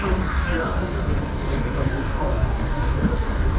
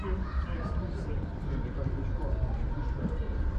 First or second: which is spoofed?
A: first